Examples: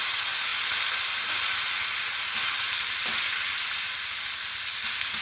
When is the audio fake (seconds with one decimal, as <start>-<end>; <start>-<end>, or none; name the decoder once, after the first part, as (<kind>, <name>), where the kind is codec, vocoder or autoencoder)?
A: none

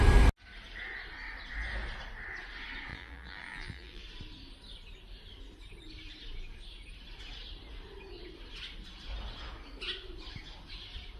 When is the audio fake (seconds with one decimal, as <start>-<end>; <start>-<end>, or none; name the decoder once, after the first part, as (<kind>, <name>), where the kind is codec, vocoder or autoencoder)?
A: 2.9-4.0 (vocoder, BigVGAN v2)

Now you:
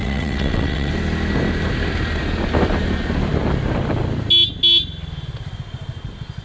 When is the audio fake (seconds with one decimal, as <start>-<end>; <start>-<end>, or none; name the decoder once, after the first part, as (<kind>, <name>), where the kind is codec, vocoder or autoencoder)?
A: 0.0-0.9 (vocoder, WaveNeXt)

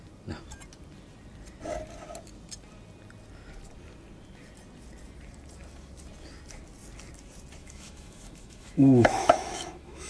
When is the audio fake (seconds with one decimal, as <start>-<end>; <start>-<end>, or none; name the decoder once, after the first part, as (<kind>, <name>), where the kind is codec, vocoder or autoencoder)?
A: 7.6-10.1 (autoencoder, DAC-VAE)

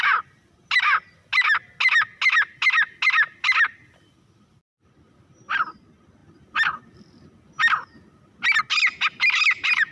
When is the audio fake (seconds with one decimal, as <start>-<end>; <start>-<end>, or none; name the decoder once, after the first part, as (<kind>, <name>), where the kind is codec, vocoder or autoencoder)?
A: none

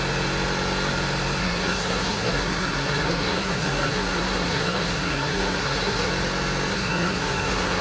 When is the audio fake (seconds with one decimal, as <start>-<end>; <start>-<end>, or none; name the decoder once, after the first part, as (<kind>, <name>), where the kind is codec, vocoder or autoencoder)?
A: 1.4-6.1 (codec, SNAC); 6.7-7.8

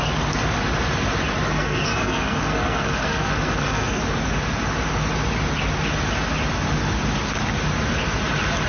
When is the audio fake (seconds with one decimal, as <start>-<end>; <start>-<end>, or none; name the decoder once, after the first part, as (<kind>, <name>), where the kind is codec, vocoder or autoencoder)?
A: 1.5-4.0 (codec, SNAC)